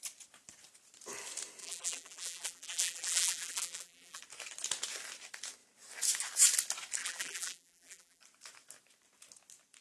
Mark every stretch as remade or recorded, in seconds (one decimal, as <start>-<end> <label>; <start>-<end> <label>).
0.0-1.6 recorded; 1.6-4.2 remade; 4.2-7.0 recorded; 7.0-8.2 remade; 8.2-9.8 recorded